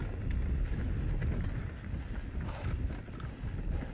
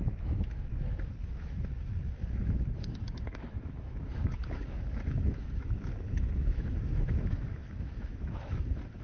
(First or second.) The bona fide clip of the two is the first